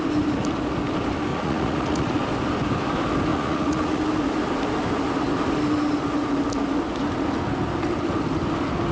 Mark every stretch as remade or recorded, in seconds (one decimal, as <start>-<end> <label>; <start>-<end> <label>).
0.0-1.3 recorded; 1.3-2.2 remade; 2.2-3.3 recorded; 3.3-4.0 remade; 4.0-8.9 recorded